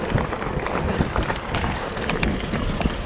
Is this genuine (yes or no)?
yes